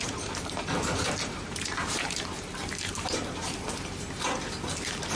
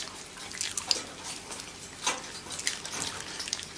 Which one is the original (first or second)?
second